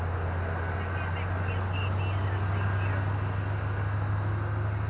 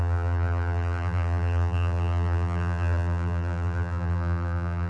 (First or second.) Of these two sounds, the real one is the first